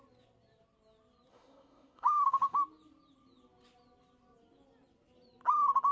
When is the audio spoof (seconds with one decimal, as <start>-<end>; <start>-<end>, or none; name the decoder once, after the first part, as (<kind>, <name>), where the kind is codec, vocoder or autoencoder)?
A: 1.3-2.6 (autoencoder, DAC-VAE)